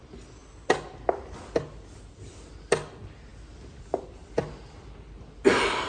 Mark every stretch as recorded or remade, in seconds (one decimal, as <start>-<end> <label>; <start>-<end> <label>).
0.0-5.9 recorded